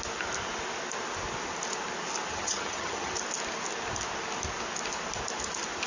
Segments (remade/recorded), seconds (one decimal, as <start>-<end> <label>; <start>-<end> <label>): 0.0-2.3 recorded; 2.3-3.1 remade; 3.1-5.9 recorded